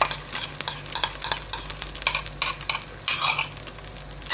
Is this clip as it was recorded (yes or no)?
yes